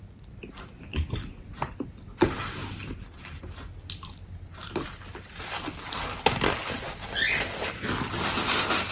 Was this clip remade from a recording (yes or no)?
no